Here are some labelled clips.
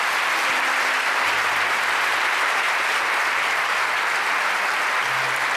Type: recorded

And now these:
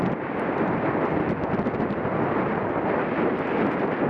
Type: recorded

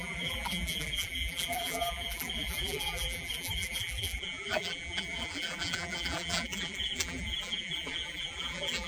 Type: remade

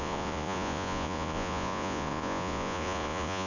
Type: remade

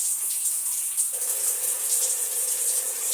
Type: remade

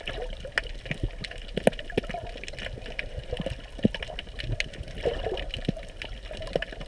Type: recorded